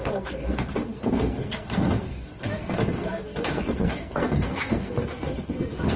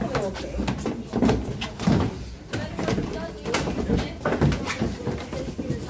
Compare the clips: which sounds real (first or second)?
second